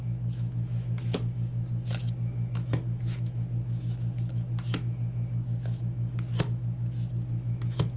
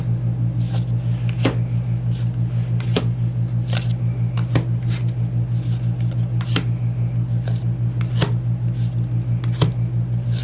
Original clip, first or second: second